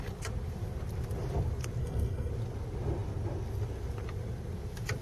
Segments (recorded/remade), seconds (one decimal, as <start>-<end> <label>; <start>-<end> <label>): 0.0-1.8 recorded; 1.8-2.3 remade; 2.3-5.0 recorded